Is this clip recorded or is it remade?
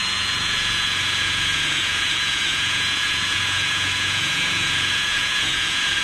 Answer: remade